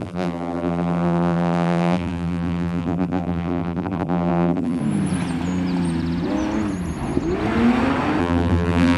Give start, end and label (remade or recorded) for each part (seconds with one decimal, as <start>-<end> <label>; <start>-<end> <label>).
0.0-4.8 remade; 4.8-8.2 recorded; 8.2-9.0 remade